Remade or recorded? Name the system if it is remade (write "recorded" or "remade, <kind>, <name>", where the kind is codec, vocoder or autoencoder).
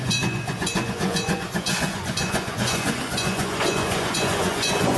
remade, vocoder, Vocos